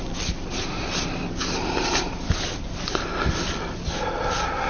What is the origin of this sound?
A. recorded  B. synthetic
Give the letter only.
A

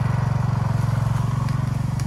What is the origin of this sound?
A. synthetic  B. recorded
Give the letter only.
B